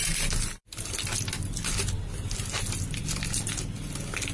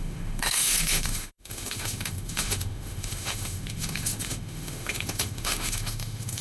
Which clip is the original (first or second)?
first